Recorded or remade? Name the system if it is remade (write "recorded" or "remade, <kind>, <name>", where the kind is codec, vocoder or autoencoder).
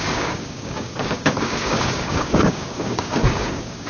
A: remade, codec, DAC